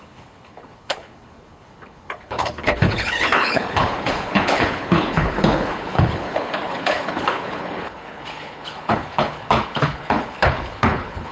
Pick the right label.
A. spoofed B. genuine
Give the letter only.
A